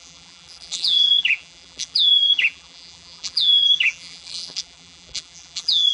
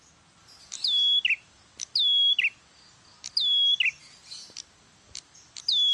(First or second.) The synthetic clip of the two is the first